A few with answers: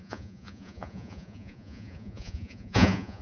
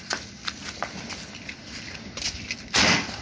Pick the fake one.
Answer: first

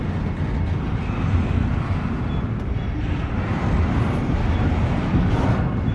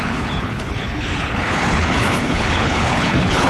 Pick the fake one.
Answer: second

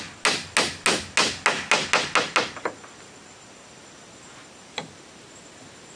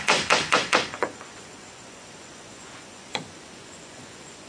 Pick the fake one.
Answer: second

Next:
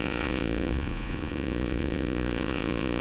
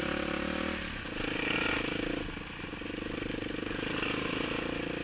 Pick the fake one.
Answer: first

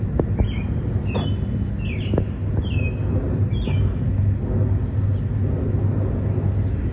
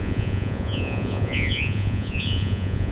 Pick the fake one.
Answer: second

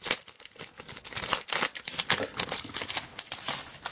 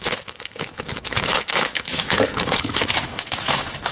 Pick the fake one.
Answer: second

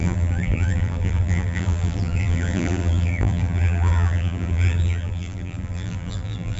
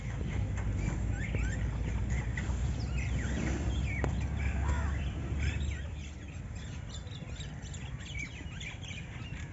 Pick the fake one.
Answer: first